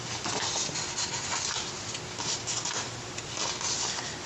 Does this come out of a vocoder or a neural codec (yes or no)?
no